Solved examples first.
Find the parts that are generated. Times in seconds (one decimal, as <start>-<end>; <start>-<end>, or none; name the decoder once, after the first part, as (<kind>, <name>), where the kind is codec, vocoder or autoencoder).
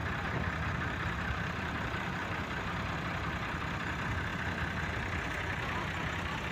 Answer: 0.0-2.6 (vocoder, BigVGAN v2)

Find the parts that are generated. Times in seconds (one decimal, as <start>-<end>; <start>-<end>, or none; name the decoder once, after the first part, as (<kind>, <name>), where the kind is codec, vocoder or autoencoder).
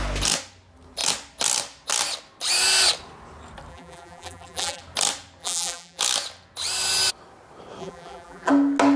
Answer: 3.7-4.8 (vocoder, BigVGAN v2); 5.4-6.0; 7.8-8.5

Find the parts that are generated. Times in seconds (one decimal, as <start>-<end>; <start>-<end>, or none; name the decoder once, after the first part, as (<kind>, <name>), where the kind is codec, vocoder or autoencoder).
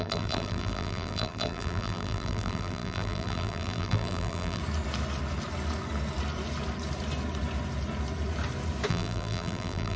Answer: 0.0-4.6 (vocoder, BigVGAN v2); 8.9-10.0